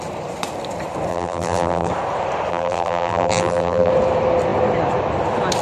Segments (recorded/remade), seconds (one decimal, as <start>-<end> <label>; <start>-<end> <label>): 0.0-1.1 recorded; 1.1-1.9 remade; 1.9-2.5 recorded; 2.5-3.9 remade; 3.9-5.6 recorded